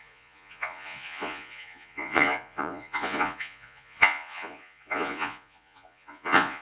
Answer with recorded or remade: remade